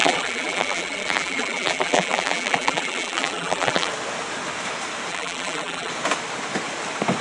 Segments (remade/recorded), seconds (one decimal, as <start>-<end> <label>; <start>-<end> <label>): 0.0-3.9 remade; 3.9-5.1 recorded; 5.1-5.9 remade; 5.9-7.2 recorded